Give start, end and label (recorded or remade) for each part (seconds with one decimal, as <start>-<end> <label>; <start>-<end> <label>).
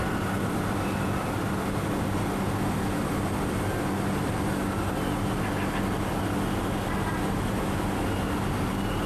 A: 0.0-9.1 recorded